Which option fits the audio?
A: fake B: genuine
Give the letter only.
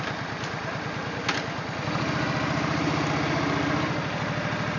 B